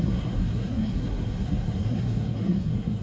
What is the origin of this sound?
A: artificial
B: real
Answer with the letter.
A